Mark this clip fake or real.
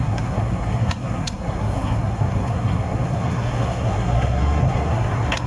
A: fake